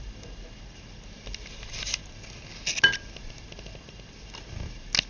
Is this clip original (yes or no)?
yes